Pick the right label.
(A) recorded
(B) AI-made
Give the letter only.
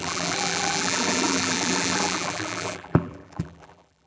B